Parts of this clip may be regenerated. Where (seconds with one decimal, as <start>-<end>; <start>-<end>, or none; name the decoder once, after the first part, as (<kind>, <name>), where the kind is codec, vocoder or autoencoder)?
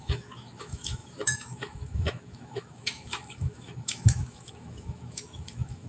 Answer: 0.0-5.9 (autoencoder, DAC-VAE)